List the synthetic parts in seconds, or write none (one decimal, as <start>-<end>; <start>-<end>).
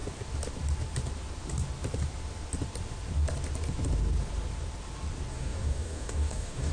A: 5.3-6.7